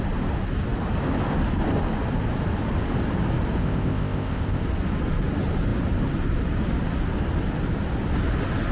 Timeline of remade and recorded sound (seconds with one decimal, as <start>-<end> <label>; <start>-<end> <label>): 0.0-3.6 recorded; 3.6-4.6 remade; 4.6-8.7 recorded

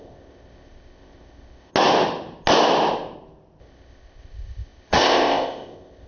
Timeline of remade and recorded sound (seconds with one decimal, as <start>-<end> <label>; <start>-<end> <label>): 0.0-1.7 remade; 1.7-3.6 recorded; 3.6-6.1 remade

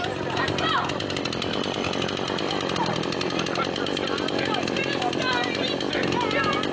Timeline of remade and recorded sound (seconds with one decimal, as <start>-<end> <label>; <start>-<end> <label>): 0.0-6.7 recorded